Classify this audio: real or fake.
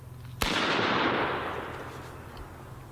real